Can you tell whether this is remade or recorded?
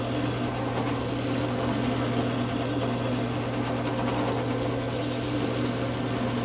recorded